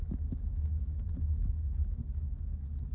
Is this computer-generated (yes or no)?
yes